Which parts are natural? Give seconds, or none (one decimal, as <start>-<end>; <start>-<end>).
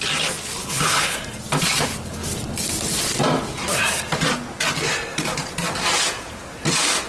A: 0.0-0.6; 1.2-7.1